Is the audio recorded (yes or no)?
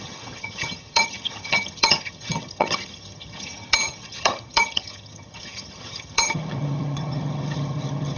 no